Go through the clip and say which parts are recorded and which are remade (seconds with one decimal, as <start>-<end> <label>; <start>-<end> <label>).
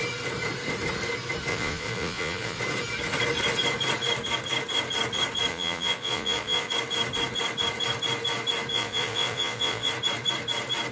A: 0.0-1.5 recorded; 1.5-2.6 remade; 2.6-5.5 recorded; 5.5-6.7 remade; 6.7-8.7 recorded; 8.7-9.9 remade; 9.9-10.9 recorded